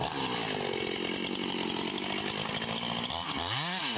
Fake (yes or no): no